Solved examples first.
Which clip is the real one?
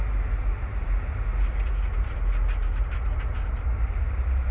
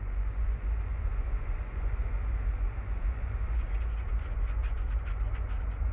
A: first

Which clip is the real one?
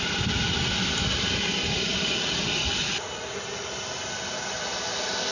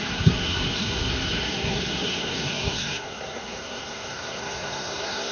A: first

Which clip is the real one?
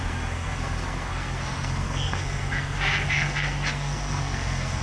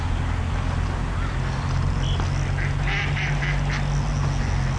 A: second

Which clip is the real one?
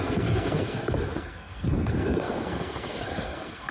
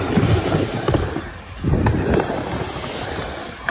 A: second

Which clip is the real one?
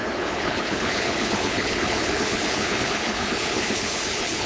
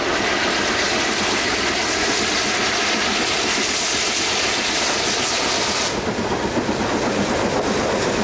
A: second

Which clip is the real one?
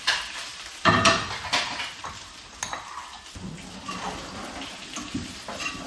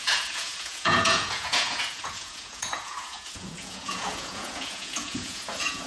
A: first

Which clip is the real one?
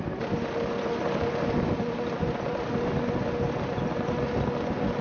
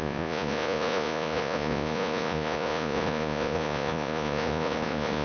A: first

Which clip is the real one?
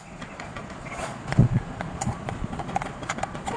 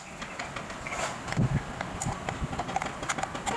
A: second